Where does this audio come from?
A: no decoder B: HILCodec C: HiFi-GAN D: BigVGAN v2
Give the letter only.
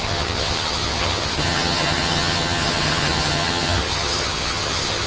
C